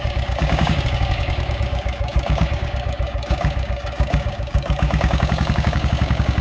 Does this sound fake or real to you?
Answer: fake